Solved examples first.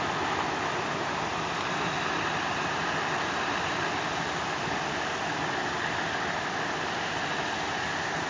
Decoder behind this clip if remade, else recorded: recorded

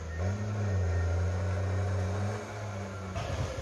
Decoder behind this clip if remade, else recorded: recorded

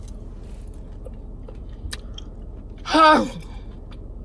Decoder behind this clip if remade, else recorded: recorded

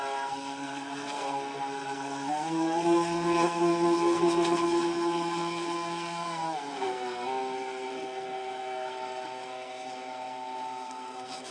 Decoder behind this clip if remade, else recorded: remade, codec, SNAC